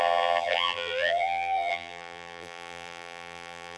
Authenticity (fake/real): fake